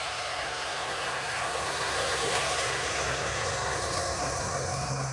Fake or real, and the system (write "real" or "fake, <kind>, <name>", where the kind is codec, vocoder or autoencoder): fake, codec, SNAC